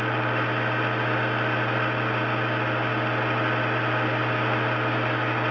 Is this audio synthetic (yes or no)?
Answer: no